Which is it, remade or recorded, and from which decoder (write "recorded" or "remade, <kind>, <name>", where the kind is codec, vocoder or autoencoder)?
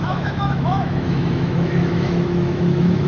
remade, autoencoder, DAC-VAE